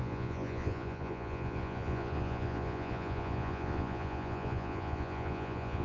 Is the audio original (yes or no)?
no